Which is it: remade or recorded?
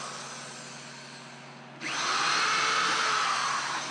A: recorded